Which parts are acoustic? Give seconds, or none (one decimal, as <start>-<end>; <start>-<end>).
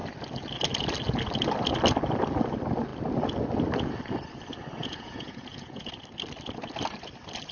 0.0-4.8; 5.9-7.5